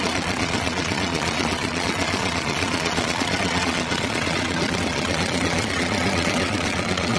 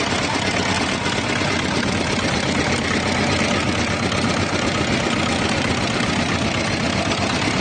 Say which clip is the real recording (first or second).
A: second